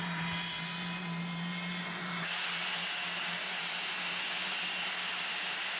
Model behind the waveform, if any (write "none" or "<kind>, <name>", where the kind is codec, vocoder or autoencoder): none